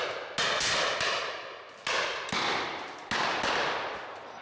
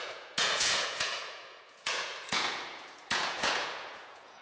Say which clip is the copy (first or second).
second